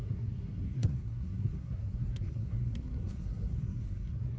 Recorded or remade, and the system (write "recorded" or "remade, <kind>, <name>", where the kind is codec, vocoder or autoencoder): remade, codec, SNAC